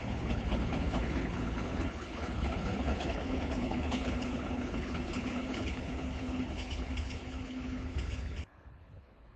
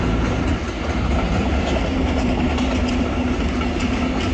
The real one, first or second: second